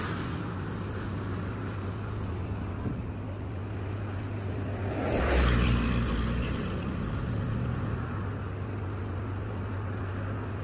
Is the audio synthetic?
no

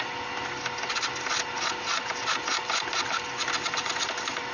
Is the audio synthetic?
no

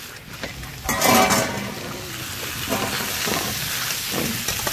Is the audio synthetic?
no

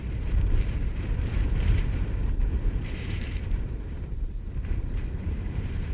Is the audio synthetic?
yes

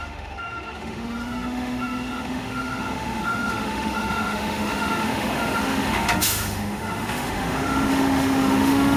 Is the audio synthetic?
yes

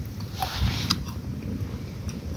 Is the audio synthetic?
no